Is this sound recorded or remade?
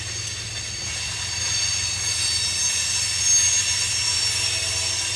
recorded